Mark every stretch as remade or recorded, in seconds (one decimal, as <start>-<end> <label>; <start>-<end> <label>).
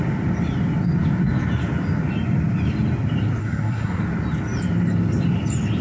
0.0-3.4 recorded; 3.4-4.0 remade; 4.0-5.8 recorded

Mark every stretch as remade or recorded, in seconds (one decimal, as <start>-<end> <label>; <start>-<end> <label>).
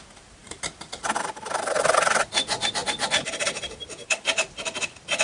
0.0-0.4 recorded; 0.4-2.3 remade; 2.3-5.2 recorded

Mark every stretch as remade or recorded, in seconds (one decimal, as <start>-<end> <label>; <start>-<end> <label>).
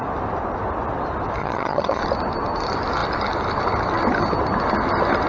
0.0-1.4 recorded; 1.4-2.0 remade; 2.0-5.3 recorded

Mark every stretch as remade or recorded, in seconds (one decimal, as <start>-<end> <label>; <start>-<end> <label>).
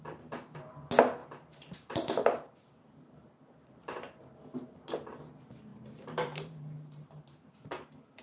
0.0-1.2 recorded; 1.2-3.3 remade; 3.3-5.7 recorded; 5.7-7.2 remade; 7.2-8.2 recorded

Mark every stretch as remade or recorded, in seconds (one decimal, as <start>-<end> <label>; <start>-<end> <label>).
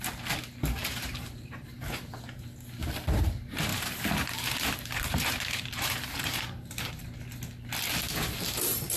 0.0-0.8 recorded; 0.8-2.0 remade; 2.0-3.7 recorded; 3.7-6.9 remade; 6.9-9.0 recorded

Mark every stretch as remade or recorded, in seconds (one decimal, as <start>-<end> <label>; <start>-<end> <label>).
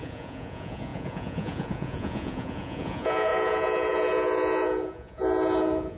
0.0-6.0 remade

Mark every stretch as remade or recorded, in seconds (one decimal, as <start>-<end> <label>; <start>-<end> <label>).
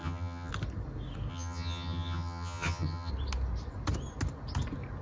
0.0-0.5 remade; 0.5-1.3 recorded; 1.3-3.1 remade; 3.1-5.0 recorded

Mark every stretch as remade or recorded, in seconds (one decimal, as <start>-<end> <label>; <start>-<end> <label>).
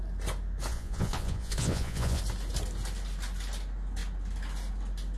0.0-0.7 recorded; 0.7-2.2 remade; 2.2-5.2 recorded